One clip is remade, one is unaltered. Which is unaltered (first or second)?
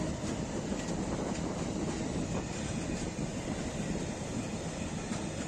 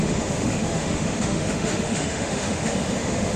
first